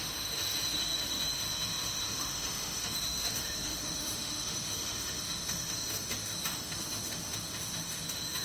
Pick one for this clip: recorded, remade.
remade